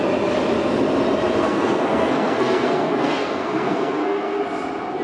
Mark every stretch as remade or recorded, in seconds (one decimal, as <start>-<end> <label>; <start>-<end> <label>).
0.0-1.4 recorded; 1.4-4.4 remade; 4.4-5.0 recorded